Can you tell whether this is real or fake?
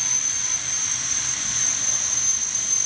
real